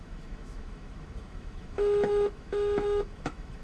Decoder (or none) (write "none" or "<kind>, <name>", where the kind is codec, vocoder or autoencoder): autoencoder, DAC-VAE